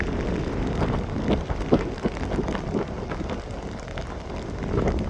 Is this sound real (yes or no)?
yes